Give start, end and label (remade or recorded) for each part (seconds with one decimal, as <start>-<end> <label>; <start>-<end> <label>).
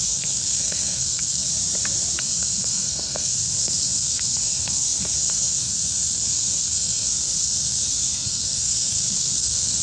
0.0-1.5 remade; 1.5-2.2 recorded; 2.2-9.8 remade